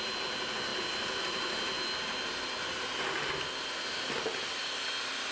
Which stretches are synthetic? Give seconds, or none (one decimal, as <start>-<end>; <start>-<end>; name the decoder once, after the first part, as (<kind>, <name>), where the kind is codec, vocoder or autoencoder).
none